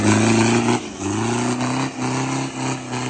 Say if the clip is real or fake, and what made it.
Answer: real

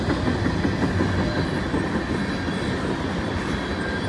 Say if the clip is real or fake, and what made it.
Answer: real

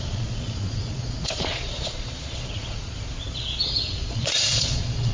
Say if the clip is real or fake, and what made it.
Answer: fake, vocoder, Vocos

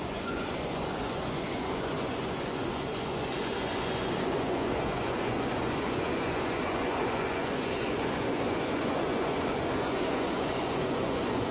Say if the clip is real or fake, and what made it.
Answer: fake, vocoder, Vocos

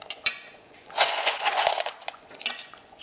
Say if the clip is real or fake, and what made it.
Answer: fake, vocoder, Vocos